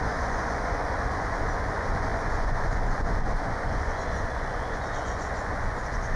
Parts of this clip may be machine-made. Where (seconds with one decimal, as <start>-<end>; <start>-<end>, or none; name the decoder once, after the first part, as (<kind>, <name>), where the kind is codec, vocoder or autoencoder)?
0.0-6.2 (vocoder, Vocos)